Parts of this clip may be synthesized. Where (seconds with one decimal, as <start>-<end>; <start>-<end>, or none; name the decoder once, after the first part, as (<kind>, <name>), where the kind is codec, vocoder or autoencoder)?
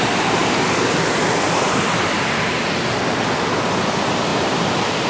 none